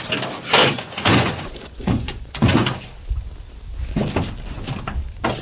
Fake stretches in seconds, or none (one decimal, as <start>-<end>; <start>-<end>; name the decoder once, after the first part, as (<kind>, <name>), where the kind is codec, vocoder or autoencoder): 0.6-2.9 (vocoder, Vocos)

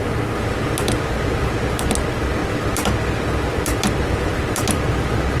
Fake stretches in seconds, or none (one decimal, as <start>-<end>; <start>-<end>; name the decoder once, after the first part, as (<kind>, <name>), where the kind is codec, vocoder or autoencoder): none

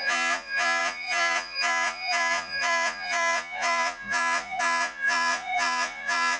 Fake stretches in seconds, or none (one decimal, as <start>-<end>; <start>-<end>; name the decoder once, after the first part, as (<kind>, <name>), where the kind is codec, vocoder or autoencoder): 0.0-6.4 (vocoder, Vocos)